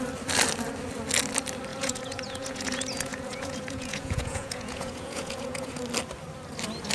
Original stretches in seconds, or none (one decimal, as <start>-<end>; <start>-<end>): 0.0-1.7; 5.8-6.9